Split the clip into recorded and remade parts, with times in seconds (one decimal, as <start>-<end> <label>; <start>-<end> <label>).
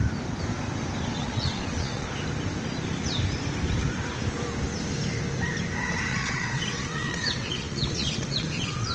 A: 0.0-1.2 recorded; 1.2-2.1 remade; 2.1-6.1 recorded; 6.1-8.9 remade